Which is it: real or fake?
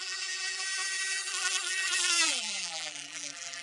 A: fake